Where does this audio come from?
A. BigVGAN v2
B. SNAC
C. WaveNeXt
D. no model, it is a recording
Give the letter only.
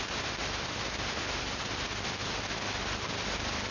D